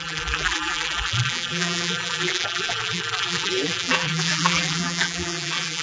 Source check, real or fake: fake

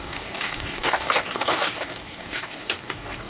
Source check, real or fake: fake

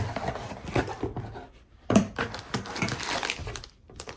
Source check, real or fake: fake